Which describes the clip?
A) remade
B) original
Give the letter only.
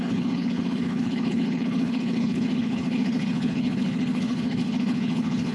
A